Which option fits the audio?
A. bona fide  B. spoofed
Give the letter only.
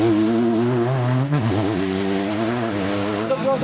A